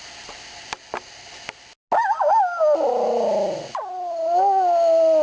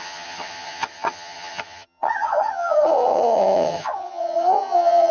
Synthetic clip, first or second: second